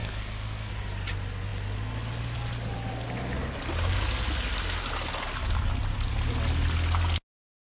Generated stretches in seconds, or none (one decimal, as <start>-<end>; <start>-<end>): 0.0-0.7